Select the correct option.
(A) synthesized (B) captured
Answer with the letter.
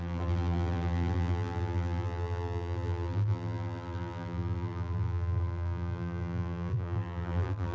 A